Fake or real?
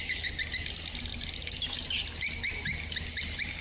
real